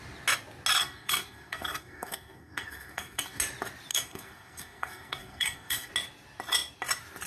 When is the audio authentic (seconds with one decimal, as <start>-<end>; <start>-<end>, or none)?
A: 0.0-0.8; 3.4-3.9; 5.9-7.3